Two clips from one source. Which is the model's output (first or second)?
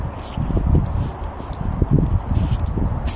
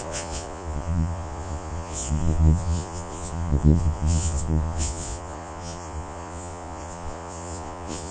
second